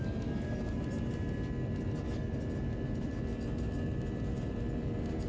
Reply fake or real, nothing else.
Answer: real